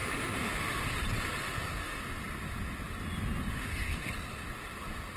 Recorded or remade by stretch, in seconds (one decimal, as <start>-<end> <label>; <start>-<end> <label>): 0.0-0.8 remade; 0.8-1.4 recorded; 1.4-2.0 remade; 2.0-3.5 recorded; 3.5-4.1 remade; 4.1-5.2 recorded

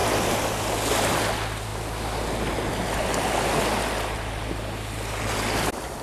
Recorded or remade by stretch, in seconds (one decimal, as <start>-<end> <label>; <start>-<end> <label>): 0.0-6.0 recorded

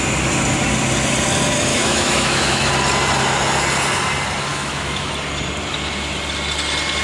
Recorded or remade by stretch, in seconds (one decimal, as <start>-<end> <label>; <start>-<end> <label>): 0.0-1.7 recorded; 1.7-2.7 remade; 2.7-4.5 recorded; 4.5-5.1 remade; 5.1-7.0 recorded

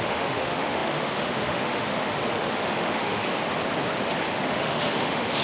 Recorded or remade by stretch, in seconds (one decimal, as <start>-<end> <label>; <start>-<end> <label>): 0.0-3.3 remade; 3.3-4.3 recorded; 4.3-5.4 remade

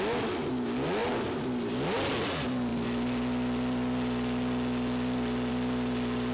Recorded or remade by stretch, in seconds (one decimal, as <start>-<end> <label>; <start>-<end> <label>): 0.0-6.3 recorded

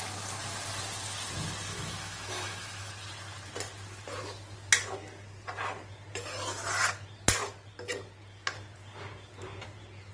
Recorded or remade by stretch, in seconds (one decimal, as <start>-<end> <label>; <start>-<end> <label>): 0.0-1.7 recorded; 1.7-2.9 remade; 2.9-10.1 recorded

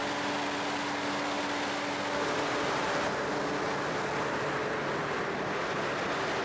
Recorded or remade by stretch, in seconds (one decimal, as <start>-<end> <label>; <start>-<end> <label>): 0.0-6.4 recorded